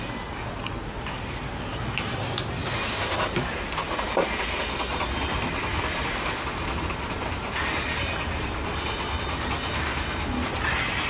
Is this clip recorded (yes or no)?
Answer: yes